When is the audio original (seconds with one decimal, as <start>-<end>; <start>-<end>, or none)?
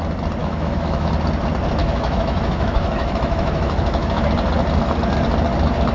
0.0-0.4; 1.1-1.8; 4.2-5.9